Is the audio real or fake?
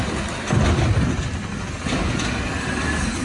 real